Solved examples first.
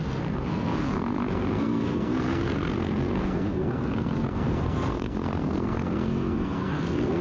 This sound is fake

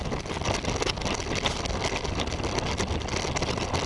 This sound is real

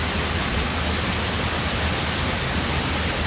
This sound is real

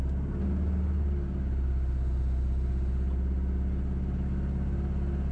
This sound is real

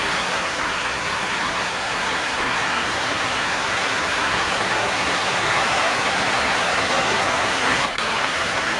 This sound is fake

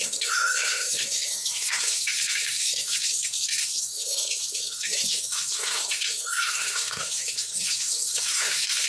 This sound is fake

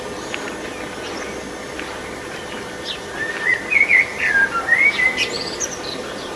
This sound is real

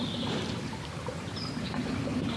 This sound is real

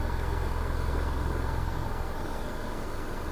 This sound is fake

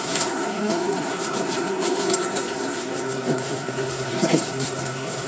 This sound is fake